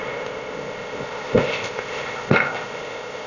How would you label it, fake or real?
fake